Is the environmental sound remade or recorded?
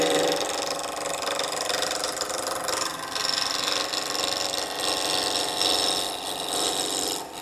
remade